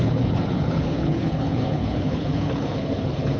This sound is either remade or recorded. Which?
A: remade